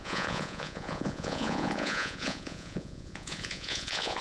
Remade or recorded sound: remade